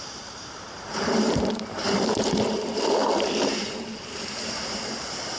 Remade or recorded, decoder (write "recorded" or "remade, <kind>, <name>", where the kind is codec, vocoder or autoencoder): remade, vocoder, BigVGAN v2